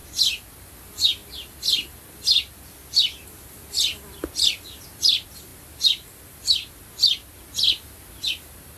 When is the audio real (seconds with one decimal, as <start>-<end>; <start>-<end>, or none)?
0.0-8.8